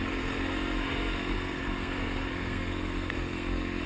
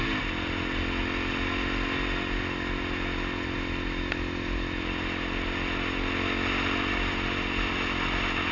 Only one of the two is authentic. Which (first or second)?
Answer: second